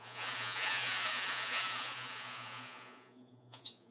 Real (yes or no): no